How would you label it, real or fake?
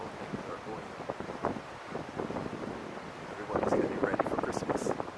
real